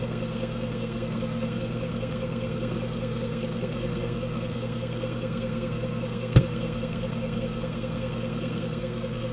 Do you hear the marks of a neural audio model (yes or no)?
yes